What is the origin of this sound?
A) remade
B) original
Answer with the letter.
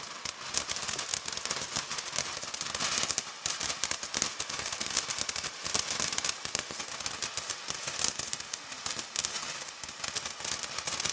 B